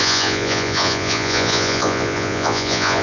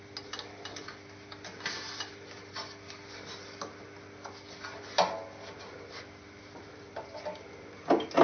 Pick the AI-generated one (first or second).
first